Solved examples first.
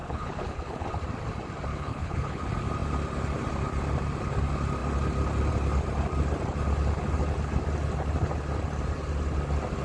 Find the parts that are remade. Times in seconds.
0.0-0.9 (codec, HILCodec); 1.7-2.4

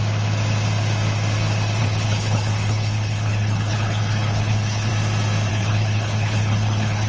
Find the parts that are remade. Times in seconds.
1.8-4.9 (codec, HILCodec); 5.5-7.1

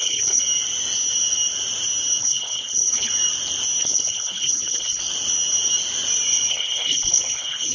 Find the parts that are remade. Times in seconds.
0.0-0.4 (codec, HILCodec); 2.2-3.1; 3.8-5.0; 6.5-7.7